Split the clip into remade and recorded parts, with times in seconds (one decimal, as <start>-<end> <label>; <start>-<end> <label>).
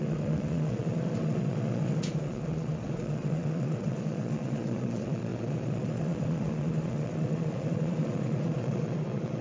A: 0.0-9.4 remade